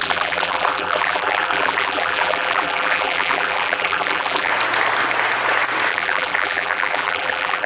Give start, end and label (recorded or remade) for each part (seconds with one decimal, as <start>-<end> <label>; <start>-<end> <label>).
0.0-4.5 remade; 4.5-5.9 recorded; 5.9-7.7 remade